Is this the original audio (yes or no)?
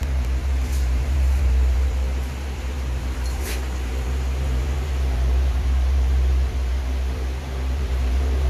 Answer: no